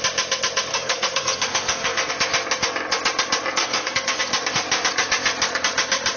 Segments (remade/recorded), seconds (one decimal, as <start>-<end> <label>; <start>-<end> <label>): 0.0-0.7 recorded; 0.7-2.1 remade; 2.1-3.6 recorded; 3.6-4.2 remade; 4.2-6.2 recorded